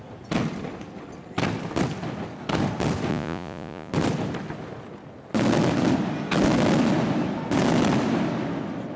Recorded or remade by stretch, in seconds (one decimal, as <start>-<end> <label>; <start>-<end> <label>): 0.0-3.1 recorded; 3.1-3.9 remade; 3.9-9.0 recorded